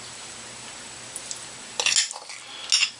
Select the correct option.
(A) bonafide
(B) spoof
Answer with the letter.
A